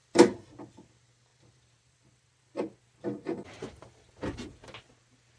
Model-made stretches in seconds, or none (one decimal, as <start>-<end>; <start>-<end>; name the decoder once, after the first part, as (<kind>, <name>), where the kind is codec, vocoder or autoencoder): 1.3-2.8 (vocoder, BigVGAN v2)